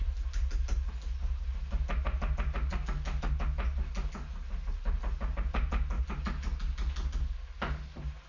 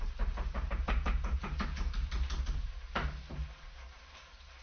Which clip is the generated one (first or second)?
second